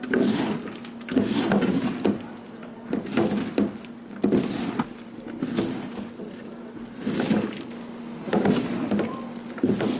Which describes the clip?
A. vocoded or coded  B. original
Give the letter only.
B